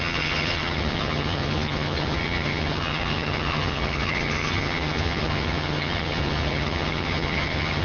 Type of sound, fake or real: fake